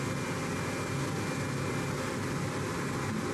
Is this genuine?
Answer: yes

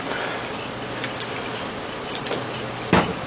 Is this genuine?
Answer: yes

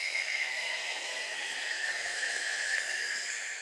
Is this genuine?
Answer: no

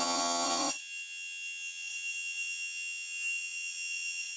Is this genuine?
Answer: no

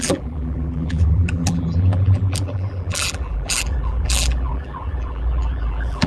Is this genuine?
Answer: no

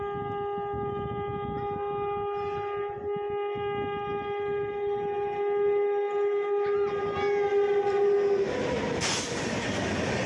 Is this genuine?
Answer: yes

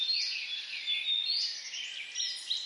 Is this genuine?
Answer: yes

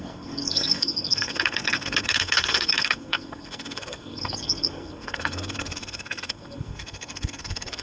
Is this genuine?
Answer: no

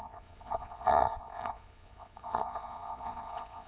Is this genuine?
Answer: no